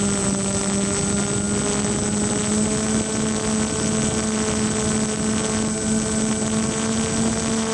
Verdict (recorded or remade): recorded